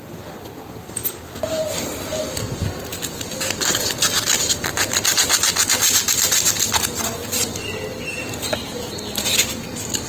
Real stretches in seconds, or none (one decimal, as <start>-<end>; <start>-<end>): 0.0-10.1

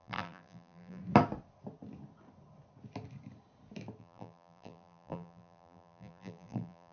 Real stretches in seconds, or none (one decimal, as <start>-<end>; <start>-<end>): 1.0-4.0

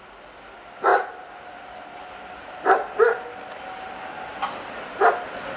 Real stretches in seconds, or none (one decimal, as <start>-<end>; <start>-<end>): 0.0-0.9; 2.1-4.3; 5.1-5.6

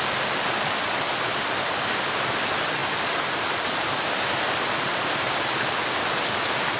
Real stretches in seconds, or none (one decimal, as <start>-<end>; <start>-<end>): 0.0-6.8

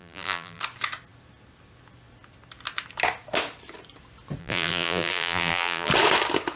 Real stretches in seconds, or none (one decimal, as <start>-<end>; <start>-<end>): 0.6-4.4; 5.9-6.6

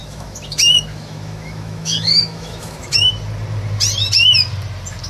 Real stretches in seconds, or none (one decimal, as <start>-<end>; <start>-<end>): 3.1-5.1

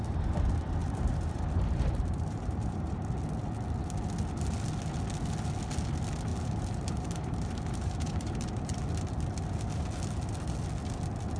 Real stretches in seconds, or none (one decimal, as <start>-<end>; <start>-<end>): 0.0-0.8; 3.1-6.3; 8.8-11.4

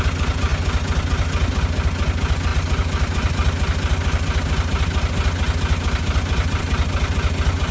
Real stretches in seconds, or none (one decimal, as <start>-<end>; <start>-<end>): 0.0-7.7